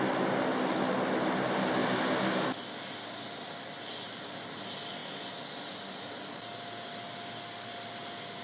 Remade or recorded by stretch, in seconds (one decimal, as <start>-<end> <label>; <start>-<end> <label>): 0.0-8.4 recorded